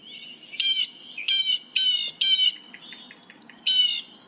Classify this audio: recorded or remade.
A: recorded